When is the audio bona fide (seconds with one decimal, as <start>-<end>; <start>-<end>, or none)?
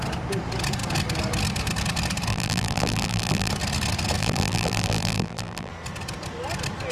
0.0-2.3; 3.5-4.2; 5.7-6.9